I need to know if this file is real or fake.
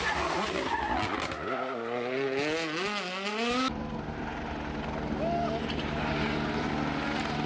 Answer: real